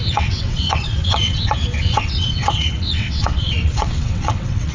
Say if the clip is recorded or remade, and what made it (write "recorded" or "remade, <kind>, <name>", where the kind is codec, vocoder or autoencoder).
remade, vocoder, WaveNeXt